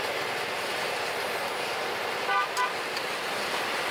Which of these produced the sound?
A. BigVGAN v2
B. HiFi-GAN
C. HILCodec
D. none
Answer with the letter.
D